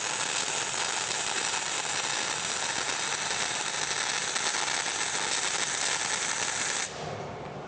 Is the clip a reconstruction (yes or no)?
no